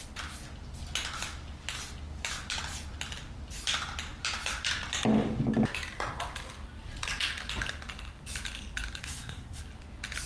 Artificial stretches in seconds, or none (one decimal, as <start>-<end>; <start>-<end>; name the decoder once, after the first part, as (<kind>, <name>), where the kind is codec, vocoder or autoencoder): 9.0-9.6 (codec, SNAC)